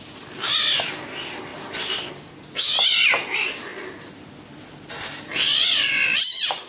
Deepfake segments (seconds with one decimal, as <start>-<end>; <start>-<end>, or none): none